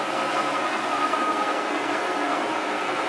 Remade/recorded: remade